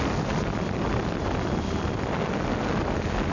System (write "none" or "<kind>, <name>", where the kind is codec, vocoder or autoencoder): none